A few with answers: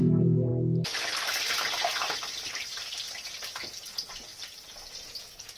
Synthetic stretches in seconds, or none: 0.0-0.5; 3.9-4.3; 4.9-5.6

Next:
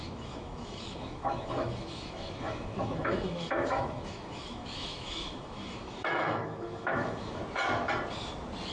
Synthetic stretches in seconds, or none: 0.0-7.4

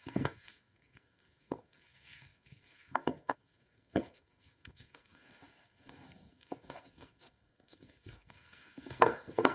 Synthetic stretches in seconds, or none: 0.0-9.5

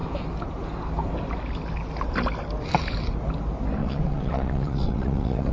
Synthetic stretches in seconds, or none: 3.8-5.5

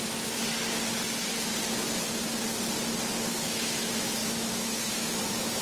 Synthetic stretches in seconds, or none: 3.3-5.6